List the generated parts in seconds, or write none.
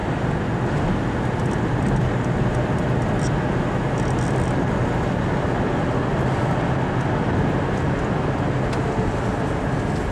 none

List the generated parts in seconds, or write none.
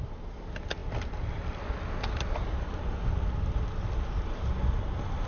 0.8-1.8 (vocoder, BigVGAN v2)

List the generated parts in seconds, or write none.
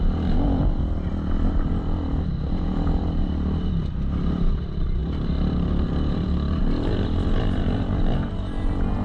none